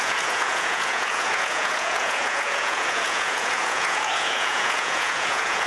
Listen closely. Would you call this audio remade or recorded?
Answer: remade